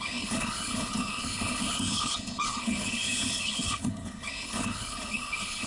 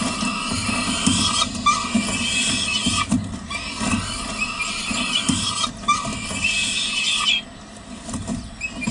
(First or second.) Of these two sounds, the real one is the second